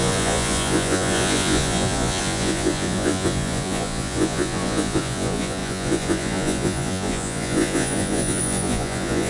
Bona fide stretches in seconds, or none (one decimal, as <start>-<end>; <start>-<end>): none

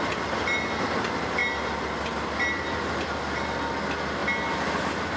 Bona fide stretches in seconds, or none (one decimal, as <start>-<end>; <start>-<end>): 0.0-5.2

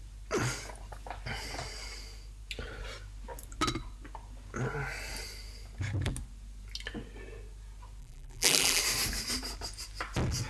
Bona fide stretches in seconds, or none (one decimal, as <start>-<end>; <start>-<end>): 0.0-8.0; 8.8-10.5

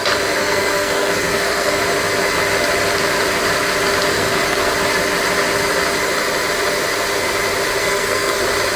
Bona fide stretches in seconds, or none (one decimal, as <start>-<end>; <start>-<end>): 0.0-0.4; 1.8-4.1; 4.7-7.8; 8.4-8.8

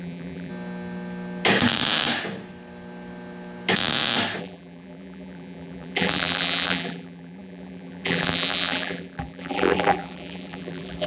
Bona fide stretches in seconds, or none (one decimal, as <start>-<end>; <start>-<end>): 0.5-4.4

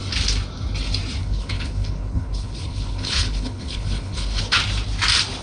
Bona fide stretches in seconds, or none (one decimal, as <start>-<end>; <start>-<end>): 0.0-1.2; 4.4-5.4

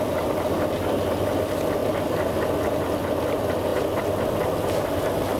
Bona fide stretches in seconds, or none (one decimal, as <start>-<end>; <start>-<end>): 0.0-5.4